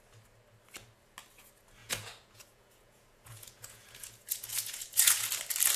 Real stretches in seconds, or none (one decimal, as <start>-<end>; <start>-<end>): 0.0-1.8; 5.3-5.8